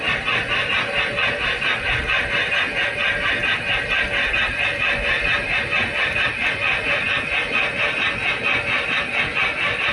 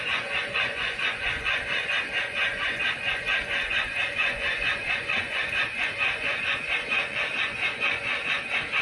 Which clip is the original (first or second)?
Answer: first